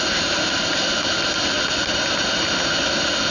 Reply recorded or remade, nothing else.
recorded